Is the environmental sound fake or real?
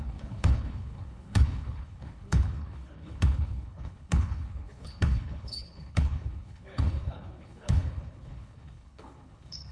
fake